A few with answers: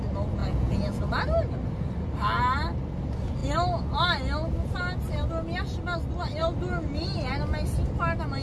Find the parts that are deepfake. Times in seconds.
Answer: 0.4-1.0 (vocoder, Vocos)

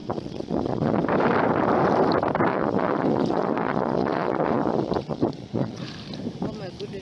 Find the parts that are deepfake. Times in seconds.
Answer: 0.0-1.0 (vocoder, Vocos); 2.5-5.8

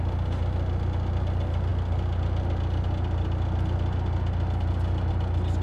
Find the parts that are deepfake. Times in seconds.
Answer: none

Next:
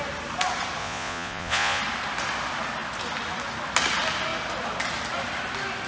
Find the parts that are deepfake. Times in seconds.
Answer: 0.8-1.8 (vocoder, Vocos)

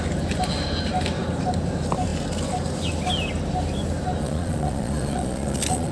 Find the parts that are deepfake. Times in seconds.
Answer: 4.2-5.9 (vocoder, Vocos)

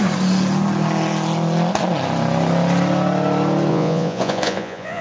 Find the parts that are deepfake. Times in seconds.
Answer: 3.7-5.0 (vocoder, Vocos)

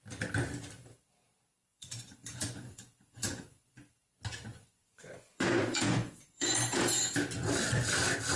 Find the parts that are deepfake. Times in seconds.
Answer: 1.7-3.9 (vocoder, Vocos); 4.5-7.0